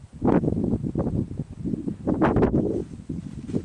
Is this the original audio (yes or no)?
yes